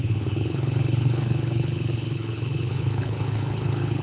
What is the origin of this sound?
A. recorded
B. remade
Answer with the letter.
B